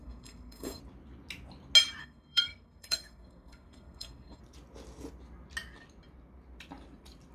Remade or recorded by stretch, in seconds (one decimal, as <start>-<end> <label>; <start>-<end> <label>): 0.0-0.8 remade; 0.8-2.0 recorded; 2.0-4.4 remade; 4.4-7.3 recorded